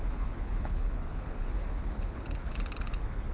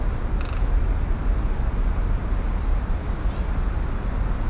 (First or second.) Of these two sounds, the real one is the second